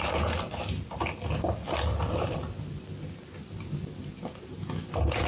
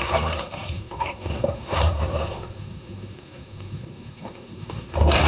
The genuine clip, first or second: first